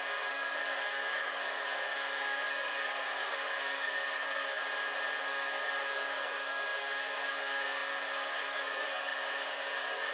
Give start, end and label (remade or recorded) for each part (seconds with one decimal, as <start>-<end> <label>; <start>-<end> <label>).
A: 0.0-4.6 remade; 4.6-5.2 recorded; 5.2-10.1 remade